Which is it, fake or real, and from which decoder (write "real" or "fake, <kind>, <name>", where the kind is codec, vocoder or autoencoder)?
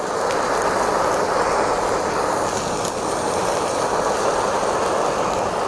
real